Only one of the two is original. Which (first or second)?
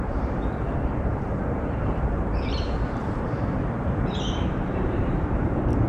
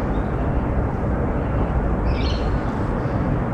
second